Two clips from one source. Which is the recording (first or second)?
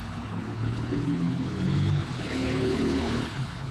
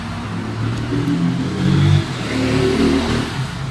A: second